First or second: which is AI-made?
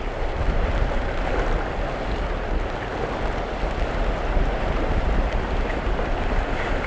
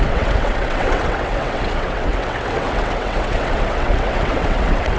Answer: second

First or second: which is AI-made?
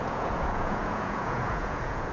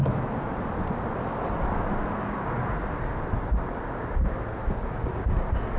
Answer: first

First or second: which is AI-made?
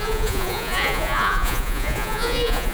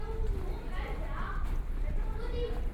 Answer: first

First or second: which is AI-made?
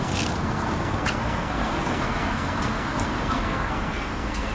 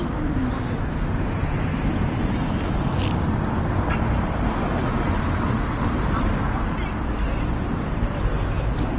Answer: first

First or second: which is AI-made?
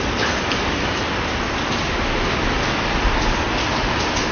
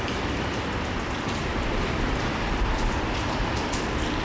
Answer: second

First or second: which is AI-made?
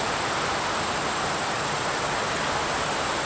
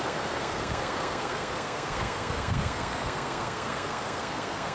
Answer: second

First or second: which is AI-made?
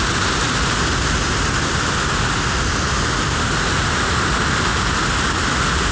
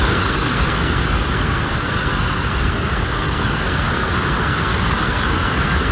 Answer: second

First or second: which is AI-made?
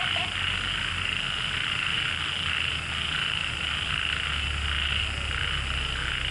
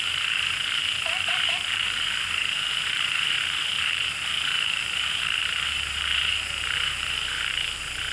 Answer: second